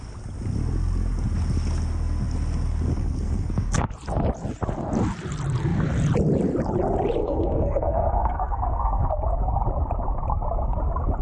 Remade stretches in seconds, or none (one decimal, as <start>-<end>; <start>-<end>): 2.9-3.9; 7.2-9.1